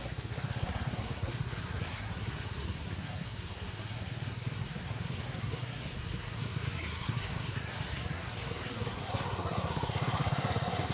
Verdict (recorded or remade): remade